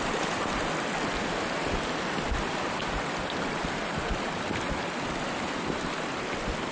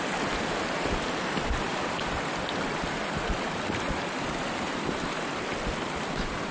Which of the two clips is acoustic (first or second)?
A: first